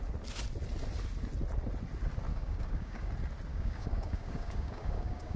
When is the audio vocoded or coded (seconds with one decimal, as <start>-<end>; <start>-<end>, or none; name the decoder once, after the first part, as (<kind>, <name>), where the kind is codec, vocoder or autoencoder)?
2.3-3.1 (codec, DAC); 3.5-5.4

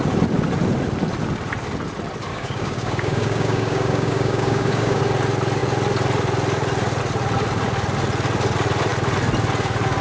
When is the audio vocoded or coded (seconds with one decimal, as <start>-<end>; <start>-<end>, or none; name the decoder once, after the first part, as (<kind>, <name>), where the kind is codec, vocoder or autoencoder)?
2.3-5.0 (codec, DAC)